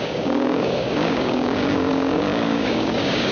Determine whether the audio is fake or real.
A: fake